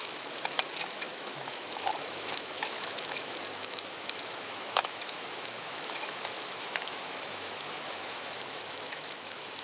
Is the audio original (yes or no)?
no